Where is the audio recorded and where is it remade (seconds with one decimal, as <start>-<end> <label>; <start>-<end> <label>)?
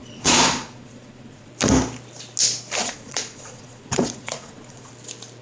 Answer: 0.0-1.5 remade; 1.5-2.8 recorded; 2.8-4.9 remade; 4.9-5.4 recorded